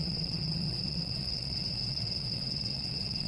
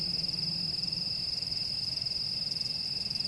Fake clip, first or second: first